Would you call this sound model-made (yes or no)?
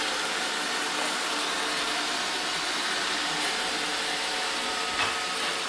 no